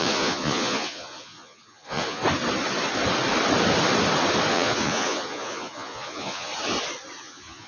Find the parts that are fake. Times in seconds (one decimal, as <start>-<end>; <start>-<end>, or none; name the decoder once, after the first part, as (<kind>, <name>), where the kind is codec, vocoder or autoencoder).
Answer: 0.0-2.2 (vocoder, Vocos); 4.5-6.5; 7.2-7.7